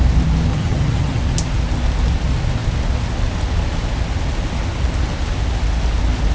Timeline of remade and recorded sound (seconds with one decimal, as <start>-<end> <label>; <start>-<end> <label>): 0.0-0.5 recorded; 0.5-1.2 remade; 1.2-6.3 recorded